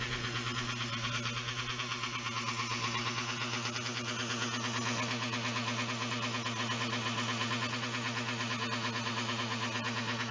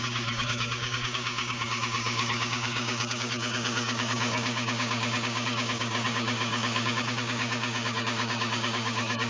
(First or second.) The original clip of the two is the first